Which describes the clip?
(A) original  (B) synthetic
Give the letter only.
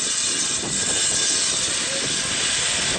A